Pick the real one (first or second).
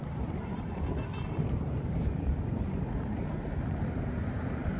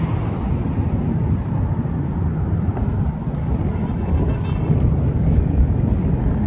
second